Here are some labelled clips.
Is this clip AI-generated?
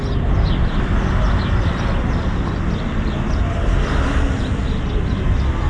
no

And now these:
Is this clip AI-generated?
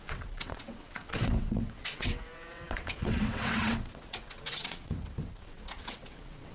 yes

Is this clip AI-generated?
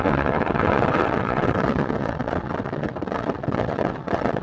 yes